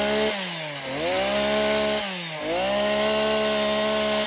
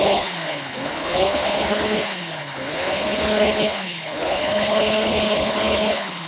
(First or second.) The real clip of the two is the first